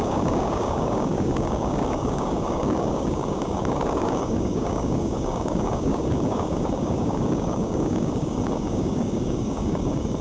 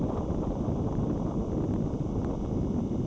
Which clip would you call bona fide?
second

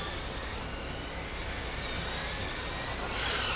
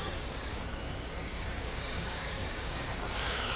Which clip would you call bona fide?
first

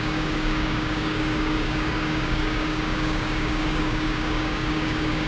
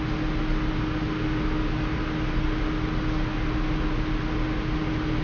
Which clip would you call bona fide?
second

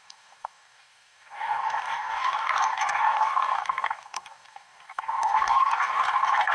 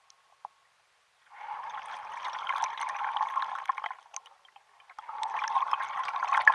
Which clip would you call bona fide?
second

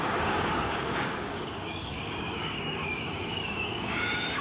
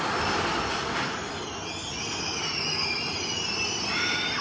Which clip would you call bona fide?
second